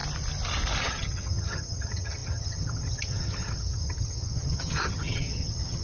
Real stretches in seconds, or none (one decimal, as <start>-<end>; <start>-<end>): 0.0-0.8